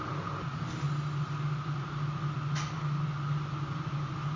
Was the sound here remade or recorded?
recorded